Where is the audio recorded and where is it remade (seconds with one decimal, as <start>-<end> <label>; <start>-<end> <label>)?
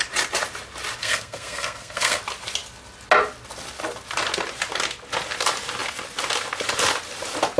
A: 0.0-1.0 recorded; 1.0-2.2 remade; 2.2-7.6 recorded